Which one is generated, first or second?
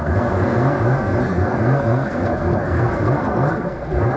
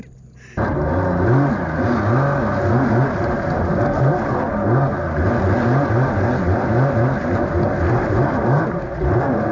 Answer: first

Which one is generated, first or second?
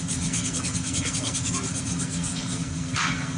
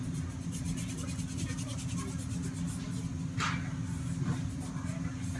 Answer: first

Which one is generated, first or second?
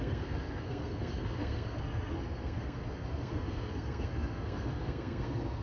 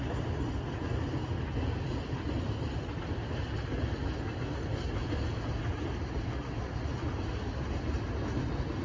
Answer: first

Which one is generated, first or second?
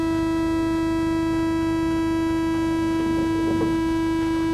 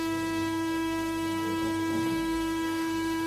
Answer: second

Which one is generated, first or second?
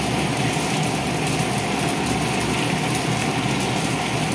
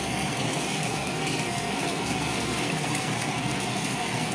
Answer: second